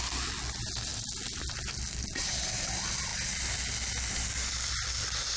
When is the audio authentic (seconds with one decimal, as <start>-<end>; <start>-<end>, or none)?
0.0-5.4

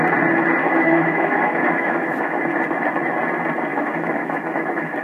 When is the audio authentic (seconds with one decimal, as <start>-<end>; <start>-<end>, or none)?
0.0-0.6; 2.4-3.7